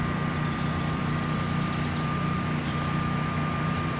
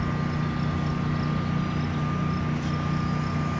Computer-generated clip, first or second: first